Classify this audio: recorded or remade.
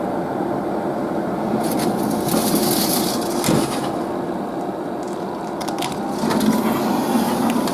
recorded